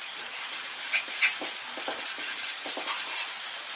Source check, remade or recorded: recorded